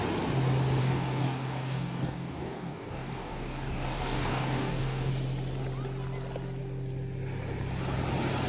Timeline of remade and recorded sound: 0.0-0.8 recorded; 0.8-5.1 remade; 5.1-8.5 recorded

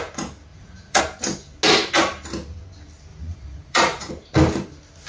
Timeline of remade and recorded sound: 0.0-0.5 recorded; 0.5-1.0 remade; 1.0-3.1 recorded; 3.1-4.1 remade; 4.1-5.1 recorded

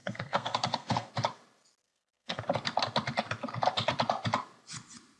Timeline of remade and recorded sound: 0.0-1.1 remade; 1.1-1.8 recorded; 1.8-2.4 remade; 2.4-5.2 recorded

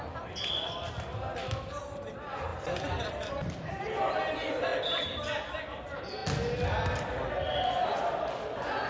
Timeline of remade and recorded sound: 0.0-2.5 recorded; 2.5-4.1 remade; 4.1-4.7 recorded; 4.7-5.6 remade; 5.6-8.9 recorded

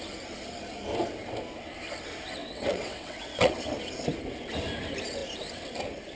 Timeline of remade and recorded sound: 0.0-2.4 recorded; 2.4-3.5 remade; 3.5-6.2 recorded

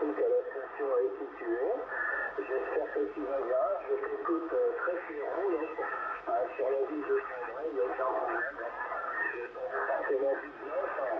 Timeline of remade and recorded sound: 0.0-4.1 recorded; 4.1-6.9 remade; 6.9-11.2 recorded

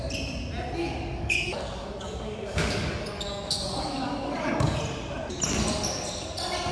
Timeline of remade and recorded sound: 0.0-0.8 recorded; 0.8-4.8 remade; 4.8-6.7 recorded